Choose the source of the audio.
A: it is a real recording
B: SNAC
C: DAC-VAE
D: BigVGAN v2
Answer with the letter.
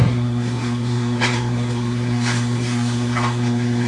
B